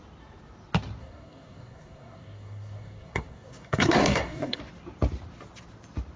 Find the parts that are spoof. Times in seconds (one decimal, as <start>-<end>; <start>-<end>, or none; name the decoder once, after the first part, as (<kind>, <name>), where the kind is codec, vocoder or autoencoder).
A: 1.0-4.6 (codec, SNAC)